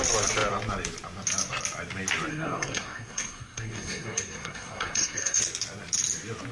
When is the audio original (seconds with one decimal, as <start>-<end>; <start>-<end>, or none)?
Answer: 0.0-2.3; 5.4-6.5